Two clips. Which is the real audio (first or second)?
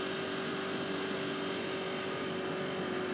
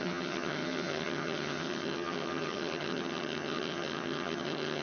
first